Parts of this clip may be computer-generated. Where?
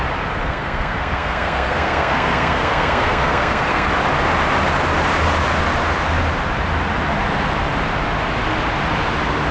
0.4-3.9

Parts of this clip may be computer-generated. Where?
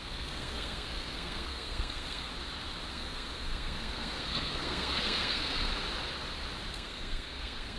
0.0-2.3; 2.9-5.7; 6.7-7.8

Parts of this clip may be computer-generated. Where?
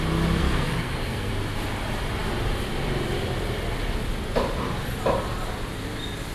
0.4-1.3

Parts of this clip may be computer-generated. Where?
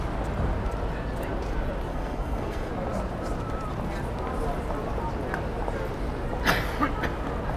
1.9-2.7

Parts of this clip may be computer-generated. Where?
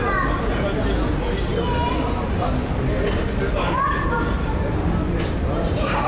none